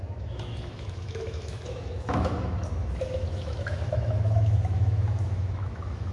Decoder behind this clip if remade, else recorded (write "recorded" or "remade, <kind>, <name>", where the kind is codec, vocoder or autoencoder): remade, autoencoder, DAC-VAE